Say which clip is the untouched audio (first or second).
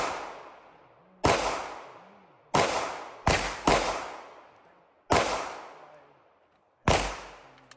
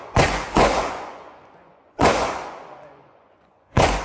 first